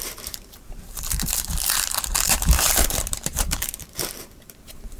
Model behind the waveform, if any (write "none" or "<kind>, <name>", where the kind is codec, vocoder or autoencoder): vocoder, BigVGAN v2